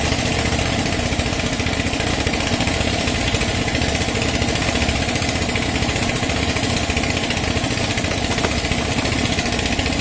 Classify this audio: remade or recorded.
recorded